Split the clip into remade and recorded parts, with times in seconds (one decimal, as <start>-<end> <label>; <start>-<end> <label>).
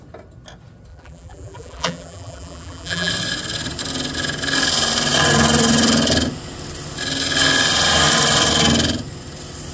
0.0-0.9 recorded; 0.9-3.1 remade; 3.1-9.7 recorded